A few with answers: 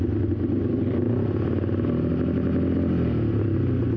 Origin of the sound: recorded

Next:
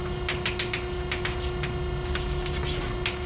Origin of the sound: recorded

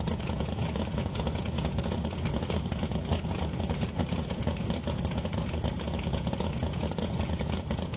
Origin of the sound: remade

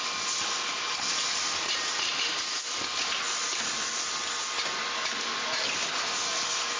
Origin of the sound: recorded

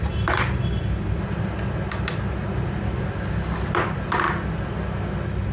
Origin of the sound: recorded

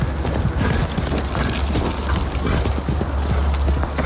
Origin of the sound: recorded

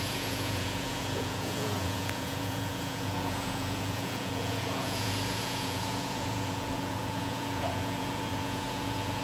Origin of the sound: remade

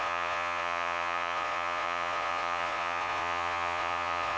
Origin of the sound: remade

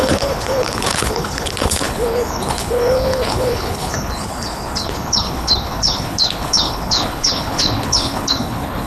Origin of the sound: remade